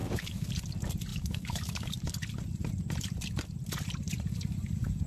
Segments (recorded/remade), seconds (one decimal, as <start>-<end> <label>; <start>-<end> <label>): 0.0-0.5 remade; 0.5-1.1 recorded; 1.1-1.9 remade; 1.9-5.1 recorded